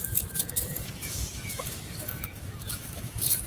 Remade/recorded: remade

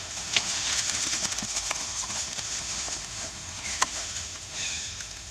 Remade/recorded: remade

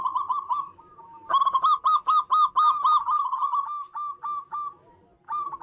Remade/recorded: recorded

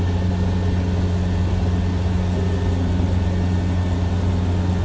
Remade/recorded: recorded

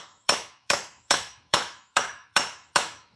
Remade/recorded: remade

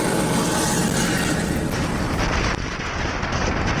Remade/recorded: recorded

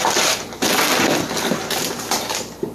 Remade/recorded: recorded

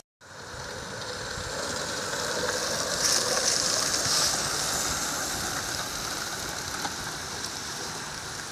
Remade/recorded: recorded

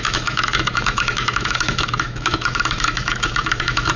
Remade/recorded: remade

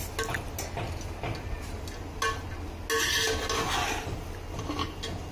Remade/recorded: recorded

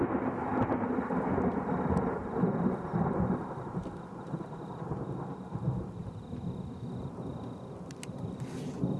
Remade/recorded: recorded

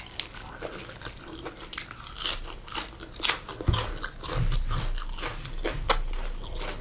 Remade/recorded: recorded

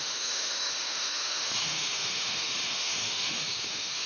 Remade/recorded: remade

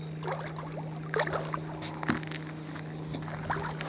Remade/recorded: recorded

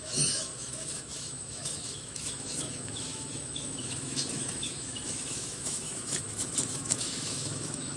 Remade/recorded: remade